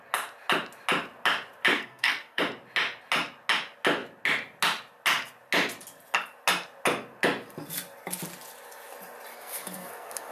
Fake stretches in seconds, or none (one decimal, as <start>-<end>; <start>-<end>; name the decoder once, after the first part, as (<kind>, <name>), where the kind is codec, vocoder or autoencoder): 1.7-2.4 (codec, SNAC); 9.3-10.3